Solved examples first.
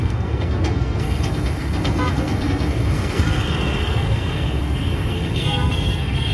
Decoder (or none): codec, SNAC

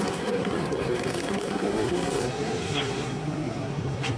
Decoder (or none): codec, SNAC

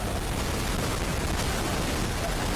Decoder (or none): none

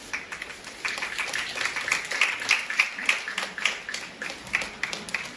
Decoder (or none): none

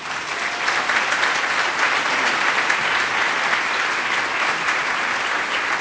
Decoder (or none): none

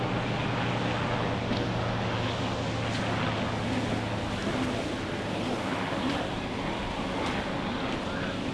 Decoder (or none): none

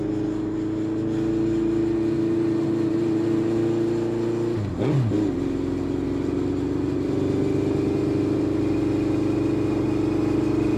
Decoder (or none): none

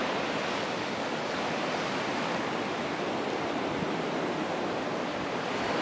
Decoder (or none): none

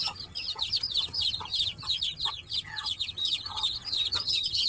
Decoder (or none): vocoder, HiFi-GAN